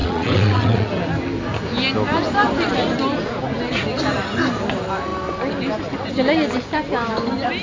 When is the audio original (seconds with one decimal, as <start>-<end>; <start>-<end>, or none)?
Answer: 0.9-7.6